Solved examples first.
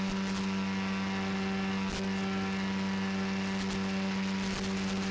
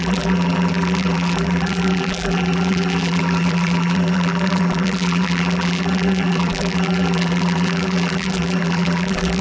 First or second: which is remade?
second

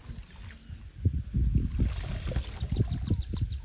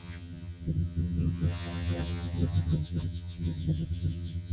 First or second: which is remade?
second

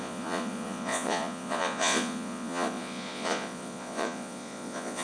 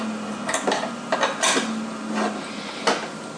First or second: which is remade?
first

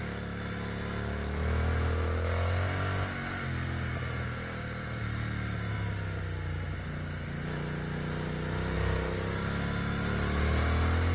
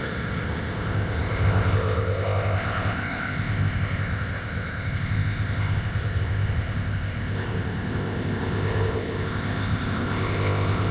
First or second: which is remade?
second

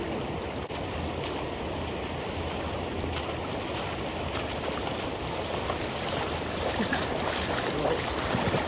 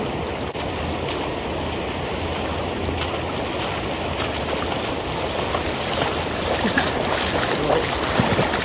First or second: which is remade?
first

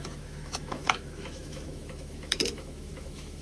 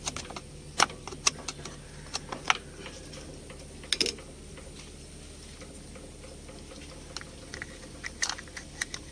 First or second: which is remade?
first